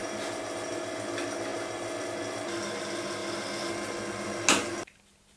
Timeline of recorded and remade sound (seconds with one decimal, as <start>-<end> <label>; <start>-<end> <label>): 0.0-5.4 recorded